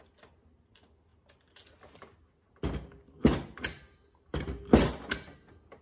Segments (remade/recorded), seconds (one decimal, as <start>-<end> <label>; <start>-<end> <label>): 0.0-5.8 recorded